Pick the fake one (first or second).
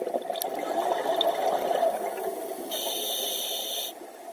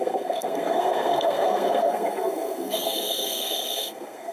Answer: second